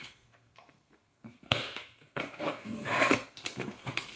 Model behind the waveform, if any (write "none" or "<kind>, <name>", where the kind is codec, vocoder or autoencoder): codec, SNAC